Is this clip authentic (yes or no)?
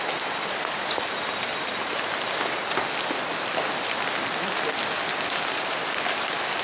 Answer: yes